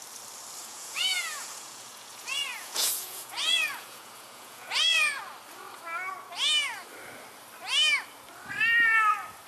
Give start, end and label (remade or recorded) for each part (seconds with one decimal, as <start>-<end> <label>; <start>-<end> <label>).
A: 0.0-0.6 recorded; 0.6-5.2 remade; 5.2-9.5 recorded